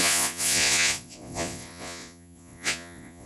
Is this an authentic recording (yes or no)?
no